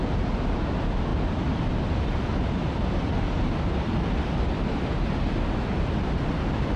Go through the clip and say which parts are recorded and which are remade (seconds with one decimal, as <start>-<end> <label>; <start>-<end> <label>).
0.0-1.1 recorded; 1.1-4.9 remade; 4.9-6.8 recorded